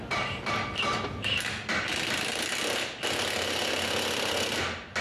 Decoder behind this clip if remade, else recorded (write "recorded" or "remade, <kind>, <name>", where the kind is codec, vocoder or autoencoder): recorded